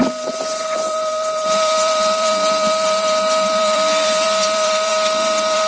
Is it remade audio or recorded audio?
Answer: remade